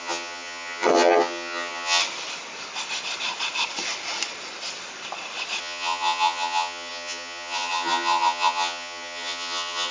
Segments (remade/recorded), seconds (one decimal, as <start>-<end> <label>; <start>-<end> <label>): 0.0-2.0 remade; 2.0-5.6 recorded; 5.6-9.9 remade

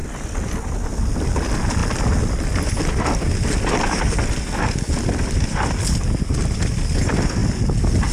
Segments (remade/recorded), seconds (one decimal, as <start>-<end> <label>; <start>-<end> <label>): 0.0-8.1 recorded

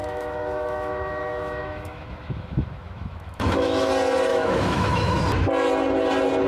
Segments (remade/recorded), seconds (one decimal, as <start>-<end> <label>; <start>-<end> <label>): 0.0-3.9 remade; 3.9-4.3 recorded; 4.3-5.2 remade; 5.2-6.5 recorded

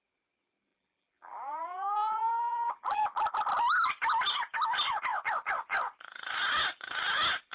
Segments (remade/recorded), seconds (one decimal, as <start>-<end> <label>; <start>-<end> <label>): 0.0-0.7 recorded; 0.7-3.5 remade; 3.5-7.5 recorded

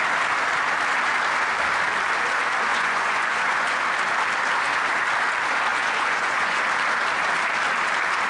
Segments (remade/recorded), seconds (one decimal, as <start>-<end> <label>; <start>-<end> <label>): 0.0-2.7 recorded; 2.7-3.8 remade; 3.8-5.7 recorded; 5.7-6.6 remade; 6.6-8.3 recorded

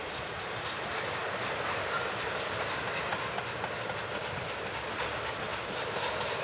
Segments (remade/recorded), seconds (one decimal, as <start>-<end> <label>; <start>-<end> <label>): 0.0-5.5 recorded; 5.5-6.0 remade; 6.0-6.4 recorded

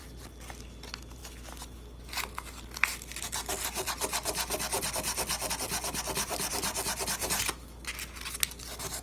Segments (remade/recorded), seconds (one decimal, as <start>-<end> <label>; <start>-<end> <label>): 0.0-9.0 recorded